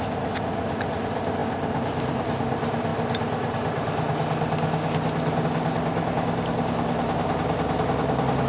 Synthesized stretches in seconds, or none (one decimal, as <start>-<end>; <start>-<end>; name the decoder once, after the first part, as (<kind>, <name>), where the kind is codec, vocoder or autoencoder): 1.4-2.2 (vocoder, BigVGAN v2)